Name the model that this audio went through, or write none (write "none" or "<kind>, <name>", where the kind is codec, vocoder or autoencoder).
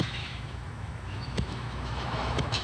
autoencoder, DAC-VAE